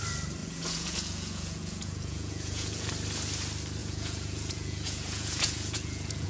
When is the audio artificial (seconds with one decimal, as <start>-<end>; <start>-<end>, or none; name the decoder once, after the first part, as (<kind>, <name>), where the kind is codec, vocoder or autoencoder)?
0.4-2.9 (vocoder, Vocos); 3.8-6.3